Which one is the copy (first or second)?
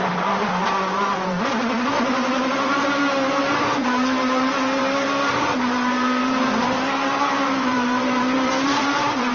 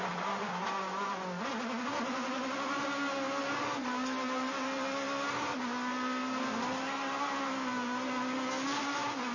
first